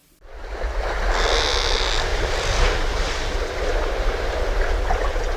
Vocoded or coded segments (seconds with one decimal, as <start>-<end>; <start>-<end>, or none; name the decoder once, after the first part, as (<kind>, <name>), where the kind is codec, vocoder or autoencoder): 2.1-4.3 (vocoder, BigVGAN v2)